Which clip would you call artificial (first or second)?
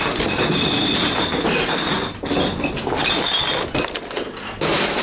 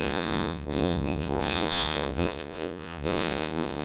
second